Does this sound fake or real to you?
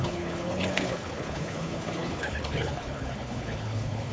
fake